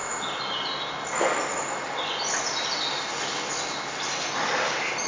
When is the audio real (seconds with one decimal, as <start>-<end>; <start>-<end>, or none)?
0.0-5.1